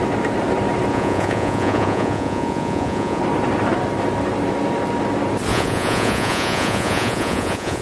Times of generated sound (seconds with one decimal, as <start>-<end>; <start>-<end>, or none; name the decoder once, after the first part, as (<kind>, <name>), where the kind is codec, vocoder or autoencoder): 0.9-3.2 (vocoder, Vocos); 5.5-7.8